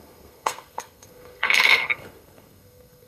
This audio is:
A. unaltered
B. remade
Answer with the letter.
B